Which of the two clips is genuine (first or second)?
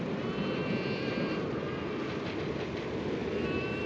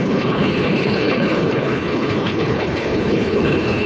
first